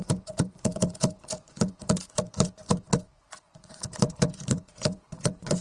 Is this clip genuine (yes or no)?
no